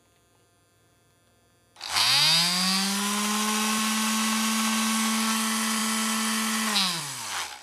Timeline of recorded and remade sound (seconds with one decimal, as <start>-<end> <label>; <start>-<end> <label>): 0.0-7.6 recorded